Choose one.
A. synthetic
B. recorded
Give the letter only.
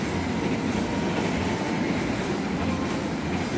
B